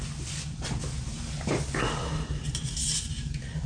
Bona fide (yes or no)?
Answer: yes